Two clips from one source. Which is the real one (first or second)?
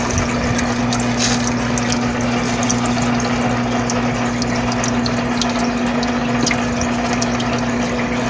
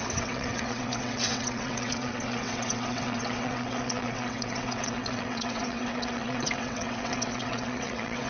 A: first